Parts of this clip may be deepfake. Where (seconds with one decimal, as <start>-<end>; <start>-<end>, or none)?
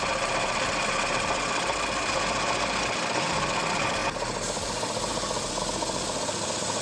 none